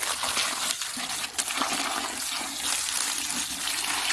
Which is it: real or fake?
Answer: real